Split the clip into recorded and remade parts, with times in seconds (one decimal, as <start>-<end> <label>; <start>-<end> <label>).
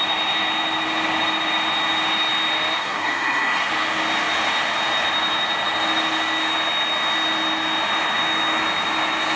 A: 0.0-2.8 recorded; 2.8-3.7 remade; 3.7-9.4 recorded